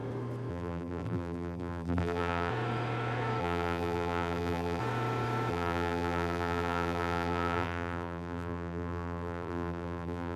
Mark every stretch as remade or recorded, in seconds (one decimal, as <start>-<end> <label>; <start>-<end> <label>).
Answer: 0.0-0.5 recorded; 0.5-2.5 remade; 2.5-3.4 recorded; 3.4-4.8 remade; 4.8-5.5 recorded; 5.5-10.4 remade